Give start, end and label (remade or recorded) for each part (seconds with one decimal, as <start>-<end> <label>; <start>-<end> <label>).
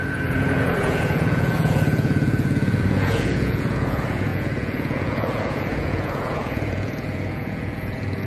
0.0-8.3 remade